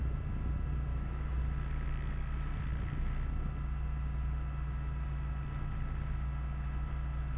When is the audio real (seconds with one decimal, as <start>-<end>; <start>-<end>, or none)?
0.0-0.9; 1.4-7.4